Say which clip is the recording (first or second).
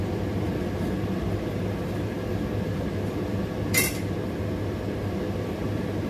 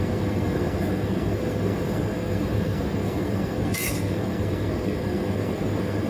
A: first